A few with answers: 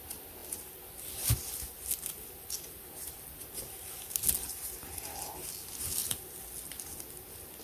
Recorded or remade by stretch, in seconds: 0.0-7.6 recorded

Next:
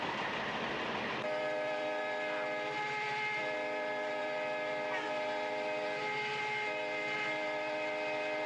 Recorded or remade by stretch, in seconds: 0.0-8.5 recorded

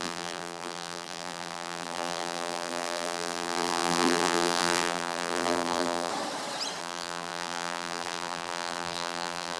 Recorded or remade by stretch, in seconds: 0.0-6.1 remade; 6.1-6.8 recorded; 6.8-9.6 remade

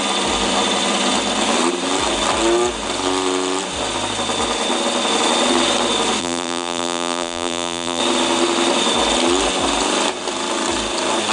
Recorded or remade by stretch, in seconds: 0.0-6.2 recorded; 6.2-8.0 remade; 8.0-11.3 recorded

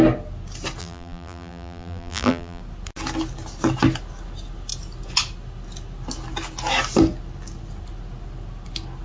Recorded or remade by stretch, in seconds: 0.0-0.8 recorded; 0.8-2.6 remade; 2.6-9.0 recorded

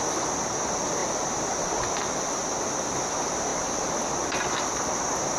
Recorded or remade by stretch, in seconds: 0.0-5.4 recorded

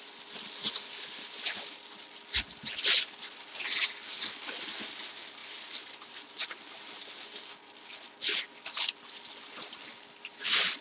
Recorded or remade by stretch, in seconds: 0.0-5.4 recorded; 5.4-6.8 remade; 6.8-10.8 recorded

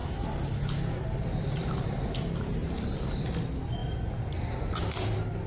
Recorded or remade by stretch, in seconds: 0.0-2.6 recorded; 2.6-3.2 remade; 3.2-3.8 recorded; 3.8-4.7 remade; 4.7-5.5 recorded